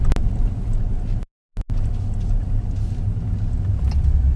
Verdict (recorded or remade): recorded